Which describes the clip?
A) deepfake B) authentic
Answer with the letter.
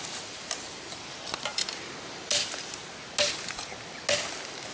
B